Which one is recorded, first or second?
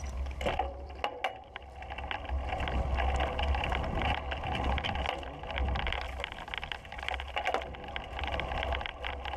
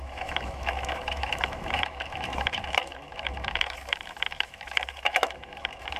first